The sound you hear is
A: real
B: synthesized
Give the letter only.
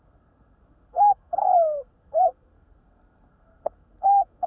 B